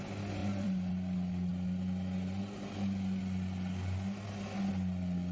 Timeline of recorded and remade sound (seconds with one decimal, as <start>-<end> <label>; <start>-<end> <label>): 0.0-0.4 recorded; 0.4-0.9 remade; 0.9-5.3 recorded